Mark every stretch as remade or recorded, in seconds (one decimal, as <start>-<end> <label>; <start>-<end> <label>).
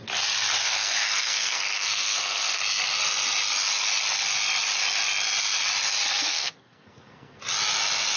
0.0-0.6 recorded; 0.6-2.6 remade; 2.6-6.1 recorded; 6.1-7.4 remade; 7.4-8.2 recorded